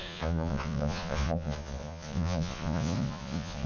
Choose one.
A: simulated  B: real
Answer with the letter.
A